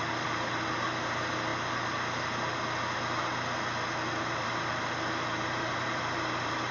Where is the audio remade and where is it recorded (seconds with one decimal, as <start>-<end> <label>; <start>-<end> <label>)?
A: 0.0-1.5 remade; 1.5-4.2 recorded; 4.2-6.7 remade